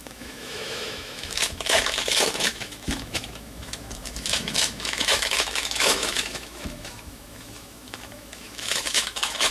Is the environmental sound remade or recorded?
remade